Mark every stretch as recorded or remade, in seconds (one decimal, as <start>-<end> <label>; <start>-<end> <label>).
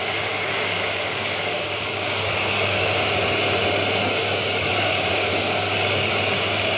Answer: 0.0-2.9 remade; 2.9-4.1 recorded; 4.1-6.8 remade